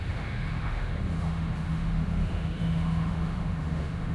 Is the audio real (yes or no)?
no